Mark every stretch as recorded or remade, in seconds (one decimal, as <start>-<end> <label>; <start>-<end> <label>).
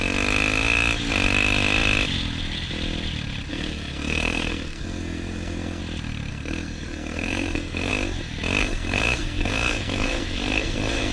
0.0-3.5 recorded; 3.5-5.8 remade; 5.8-6.3 recorded; 6.3-7.9 remade; 7.9-8.6 recorded; 8.6-11.1 remade